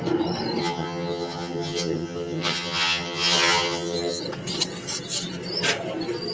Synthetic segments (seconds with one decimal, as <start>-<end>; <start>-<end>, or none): 0.6-4.2